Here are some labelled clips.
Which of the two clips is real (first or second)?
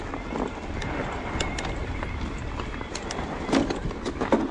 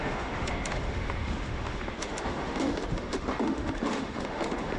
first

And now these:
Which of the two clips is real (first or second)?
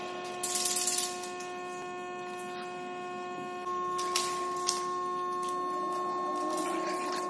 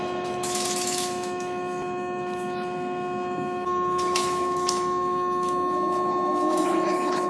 first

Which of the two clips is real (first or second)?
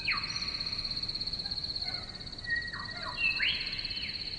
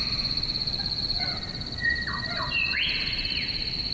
first